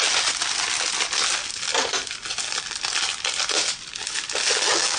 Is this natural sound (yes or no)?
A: yes